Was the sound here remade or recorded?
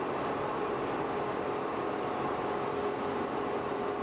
recorded